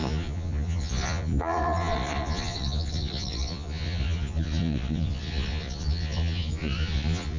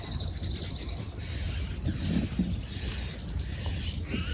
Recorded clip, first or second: second